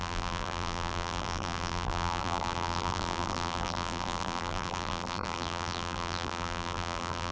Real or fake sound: fake